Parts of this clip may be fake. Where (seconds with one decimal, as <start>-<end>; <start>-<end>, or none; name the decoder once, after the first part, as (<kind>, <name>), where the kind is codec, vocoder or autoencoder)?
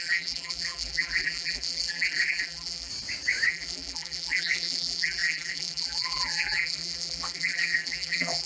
0.0-2.9 (vocoder, BigVGAN v2); 3.5-8.5